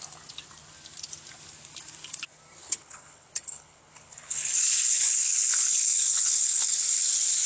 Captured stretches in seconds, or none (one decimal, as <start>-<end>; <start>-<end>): 0.0-2.6; 7.1-7.5